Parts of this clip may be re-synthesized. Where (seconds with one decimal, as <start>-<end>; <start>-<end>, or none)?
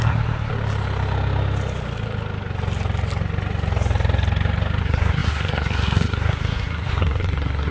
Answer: 0.0-0.5; 4.8-7.7